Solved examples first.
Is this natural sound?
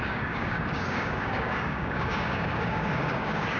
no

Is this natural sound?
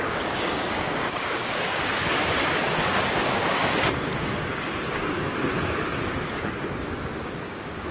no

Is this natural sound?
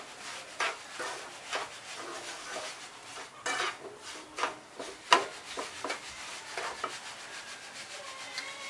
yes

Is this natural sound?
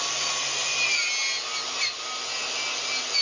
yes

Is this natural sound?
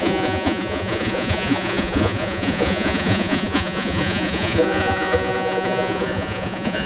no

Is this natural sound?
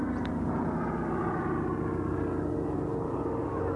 yes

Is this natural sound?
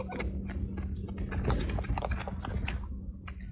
yes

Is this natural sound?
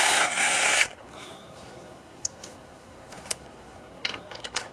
no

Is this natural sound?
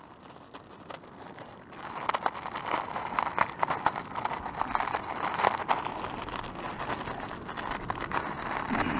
yes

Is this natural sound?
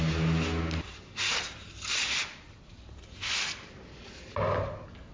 yes